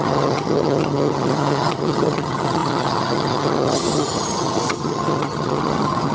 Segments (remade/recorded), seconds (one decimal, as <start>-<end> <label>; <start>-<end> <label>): 0.0-6.1 remade